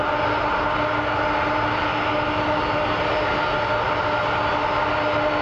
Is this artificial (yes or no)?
no